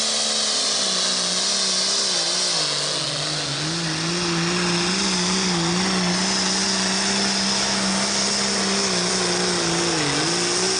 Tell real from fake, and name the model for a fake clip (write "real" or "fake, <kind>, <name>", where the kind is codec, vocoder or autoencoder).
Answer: real